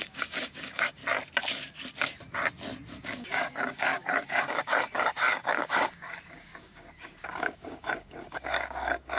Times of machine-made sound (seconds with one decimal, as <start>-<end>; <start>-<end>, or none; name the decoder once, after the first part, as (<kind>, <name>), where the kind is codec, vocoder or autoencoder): 0.0-1.0 (codec, DAC); 2.9-9.2

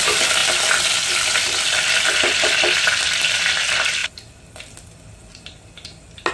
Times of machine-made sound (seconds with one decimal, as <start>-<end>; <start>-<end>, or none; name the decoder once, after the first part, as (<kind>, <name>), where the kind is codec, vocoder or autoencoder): none

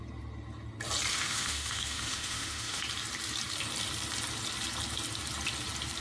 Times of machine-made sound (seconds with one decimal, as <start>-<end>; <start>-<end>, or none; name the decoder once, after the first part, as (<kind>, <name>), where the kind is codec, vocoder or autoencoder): 1.1-2.8 (autoencoder, DAC-VAE)

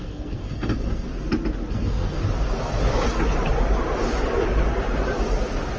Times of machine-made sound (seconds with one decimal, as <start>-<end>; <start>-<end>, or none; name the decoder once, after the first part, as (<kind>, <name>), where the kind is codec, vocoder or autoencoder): 0.0-1.1 (codec, SNAC); 1.7-2.2

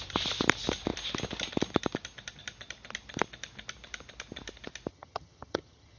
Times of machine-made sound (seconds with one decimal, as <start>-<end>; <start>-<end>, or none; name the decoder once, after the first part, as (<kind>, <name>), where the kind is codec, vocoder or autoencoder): 4.9-6.0 (vocoder, HiFi-GAN)

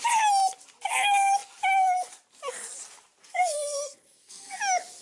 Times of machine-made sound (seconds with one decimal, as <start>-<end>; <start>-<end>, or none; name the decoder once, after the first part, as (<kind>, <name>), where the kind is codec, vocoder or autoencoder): 3.2-4.6 (codec, SNAC)